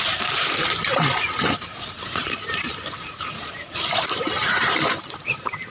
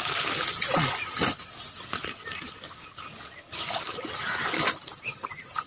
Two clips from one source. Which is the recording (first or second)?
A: second